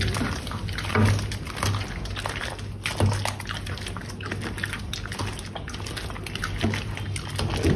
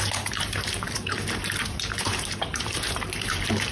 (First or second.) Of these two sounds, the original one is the first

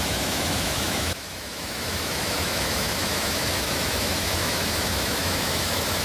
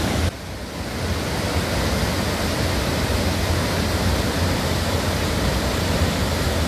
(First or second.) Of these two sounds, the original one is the second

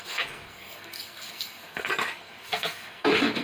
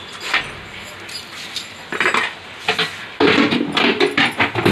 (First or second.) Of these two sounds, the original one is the second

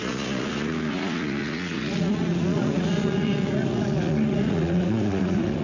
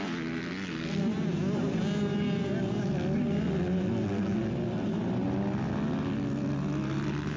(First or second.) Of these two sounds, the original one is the second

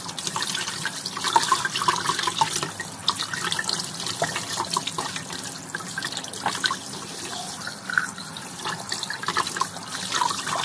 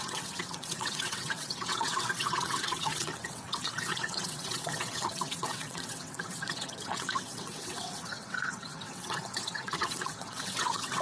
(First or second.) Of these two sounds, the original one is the first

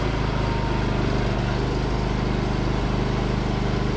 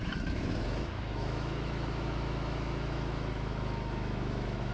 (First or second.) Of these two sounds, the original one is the first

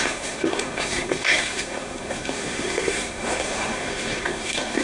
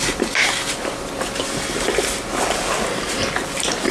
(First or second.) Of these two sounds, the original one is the second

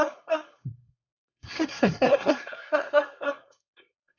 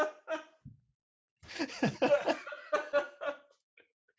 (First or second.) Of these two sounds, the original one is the second